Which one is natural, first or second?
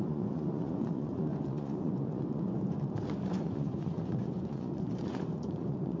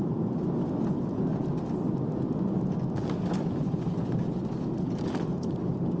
second